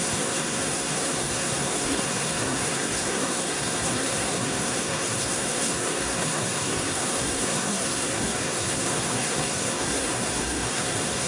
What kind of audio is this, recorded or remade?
remade